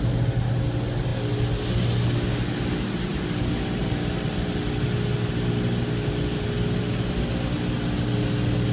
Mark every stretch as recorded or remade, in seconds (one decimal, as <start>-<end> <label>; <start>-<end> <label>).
0.0-8.7 recorded